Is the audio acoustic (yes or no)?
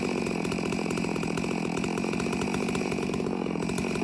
no